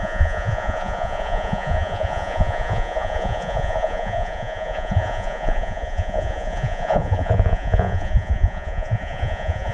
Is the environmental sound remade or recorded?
remade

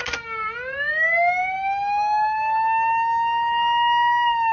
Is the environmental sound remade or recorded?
recorded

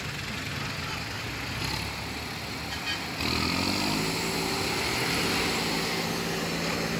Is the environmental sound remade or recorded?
recorded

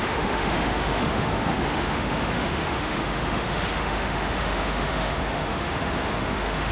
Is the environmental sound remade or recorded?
remade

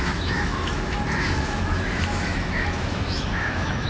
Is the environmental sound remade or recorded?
remade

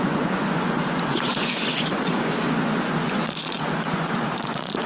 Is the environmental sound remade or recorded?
remade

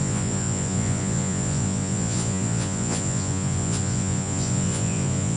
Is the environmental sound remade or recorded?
remade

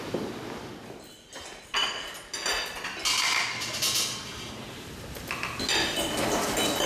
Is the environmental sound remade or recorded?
recorded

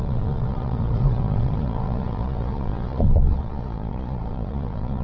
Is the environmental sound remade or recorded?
remade